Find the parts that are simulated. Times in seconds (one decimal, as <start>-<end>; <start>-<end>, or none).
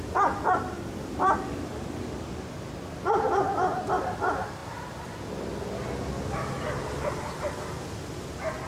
none